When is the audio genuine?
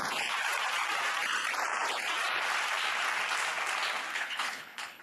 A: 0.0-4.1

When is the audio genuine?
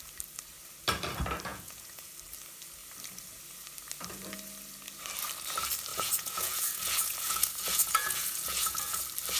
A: 0.0-1.5; 2.1-5.9; 9.0-9.4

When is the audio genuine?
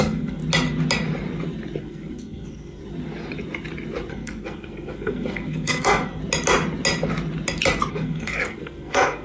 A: 0.4-1.8; 2.8-4.1; 6.2-7.9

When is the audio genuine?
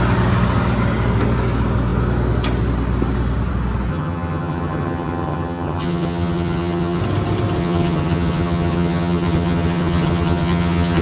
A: 0.0-3.9; 7.0-7.6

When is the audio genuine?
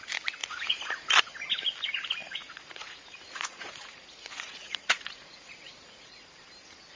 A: 0.0-0.4; 1.1-2.2; 6.3-7.0